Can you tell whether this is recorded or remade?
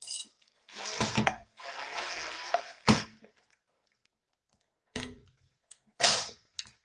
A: remade